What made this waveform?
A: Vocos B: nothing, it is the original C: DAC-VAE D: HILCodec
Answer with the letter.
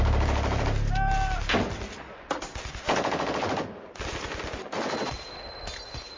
B